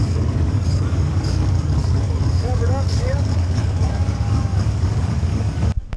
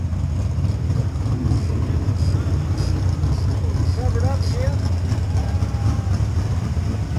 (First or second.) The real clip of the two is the second